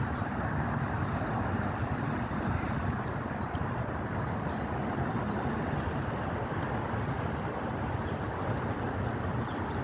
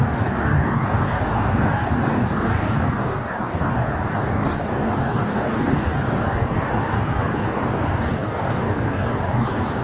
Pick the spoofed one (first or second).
second